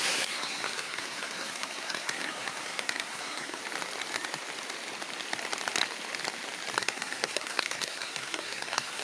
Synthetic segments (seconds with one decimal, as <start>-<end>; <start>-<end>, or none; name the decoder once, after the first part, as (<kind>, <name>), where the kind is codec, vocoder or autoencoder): 0.0-3.6 (codec, SNAC); 6.8-9.0